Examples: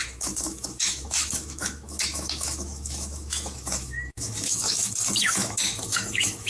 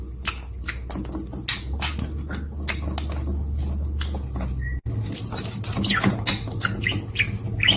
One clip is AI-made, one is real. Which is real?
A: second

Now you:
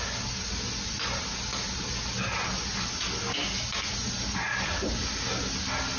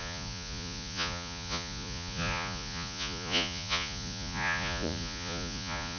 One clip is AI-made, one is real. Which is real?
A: first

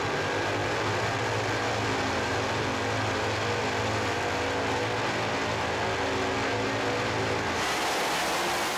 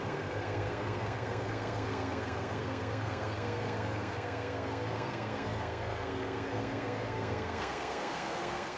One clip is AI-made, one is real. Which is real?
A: first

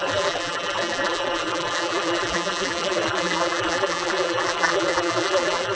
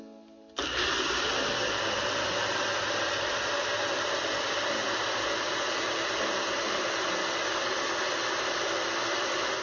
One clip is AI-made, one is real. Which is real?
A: second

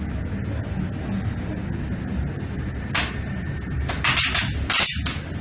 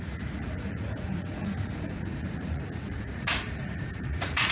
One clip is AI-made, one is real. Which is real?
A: first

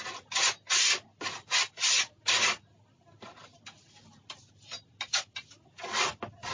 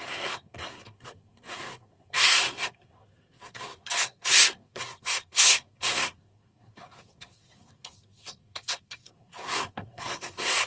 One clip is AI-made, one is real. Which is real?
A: first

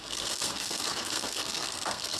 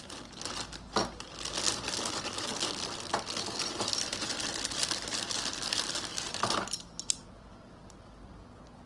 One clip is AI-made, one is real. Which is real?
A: second